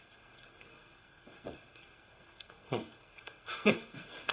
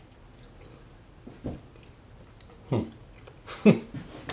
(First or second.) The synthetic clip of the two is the first